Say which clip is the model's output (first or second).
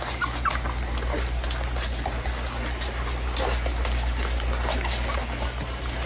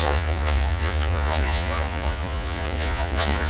second